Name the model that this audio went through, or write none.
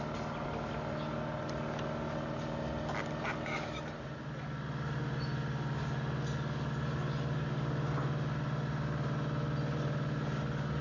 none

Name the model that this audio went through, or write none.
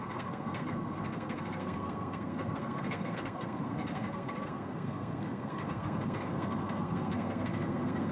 codec, SNAC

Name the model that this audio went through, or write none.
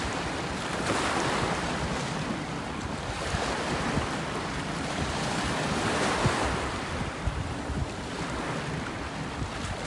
none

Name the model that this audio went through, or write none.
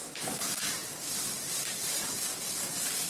vocoder, BigVGAN v2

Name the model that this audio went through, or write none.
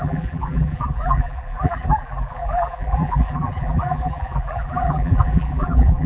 vocoder, BigVGAN v2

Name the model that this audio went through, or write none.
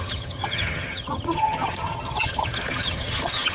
vocoder, HiFi-GAN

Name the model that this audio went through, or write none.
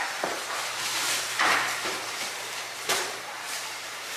vocoder, BigVGAN v2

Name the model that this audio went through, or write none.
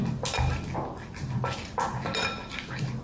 none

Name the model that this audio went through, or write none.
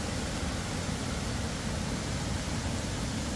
none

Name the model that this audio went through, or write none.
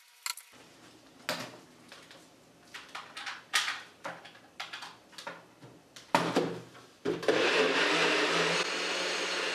none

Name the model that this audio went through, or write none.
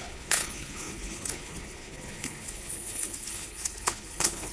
codec, HILCodec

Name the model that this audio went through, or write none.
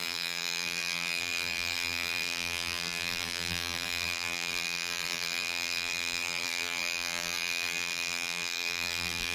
vocoder, BigVGAN v2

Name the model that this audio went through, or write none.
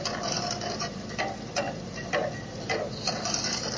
none